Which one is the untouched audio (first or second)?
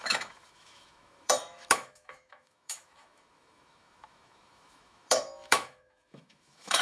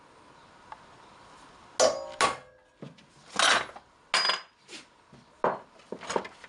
second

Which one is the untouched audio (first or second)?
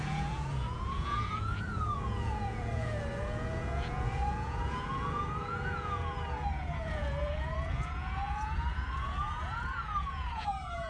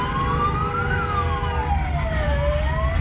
second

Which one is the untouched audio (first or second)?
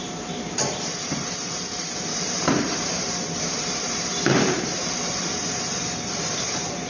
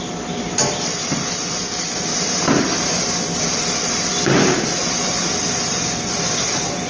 second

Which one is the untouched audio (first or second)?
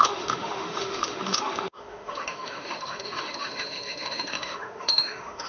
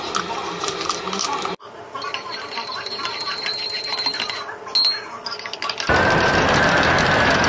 second